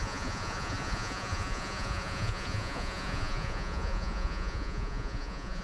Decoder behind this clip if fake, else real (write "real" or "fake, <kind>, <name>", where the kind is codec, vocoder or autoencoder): fake, vocoder, Vocos